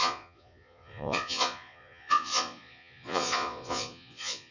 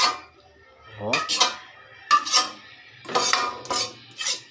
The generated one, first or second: first